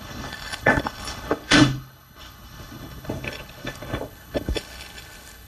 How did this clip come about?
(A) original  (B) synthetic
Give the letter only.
B